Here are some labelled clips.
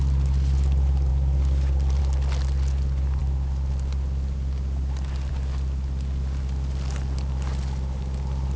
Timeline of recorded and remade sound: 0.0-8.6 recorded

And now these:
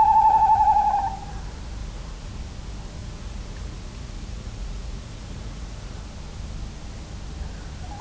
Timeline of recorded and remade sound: 0.0-1.8 recorded; 1.8-2.4 remade; 2.4-3.0 recorded; 3.0-6.0 remade; 6.0-8.0 recorded